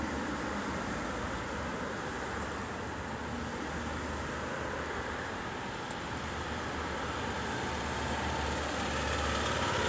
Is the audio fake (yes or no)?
no